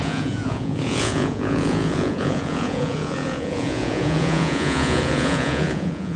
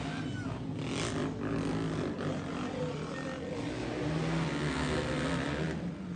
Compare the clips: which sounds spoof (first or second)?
first